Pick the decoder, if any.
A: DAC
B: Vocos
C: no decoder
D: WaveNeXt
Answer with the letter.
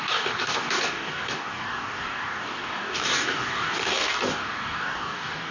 A